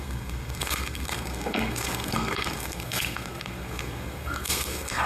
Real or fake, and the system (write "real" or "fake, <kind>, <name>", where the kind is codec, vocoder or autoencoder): fake, codec, SNAC